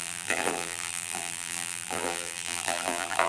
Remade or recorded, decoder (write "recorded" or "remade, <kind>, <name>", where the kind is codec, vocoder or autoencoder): remade, vocoder, BigVGAN v2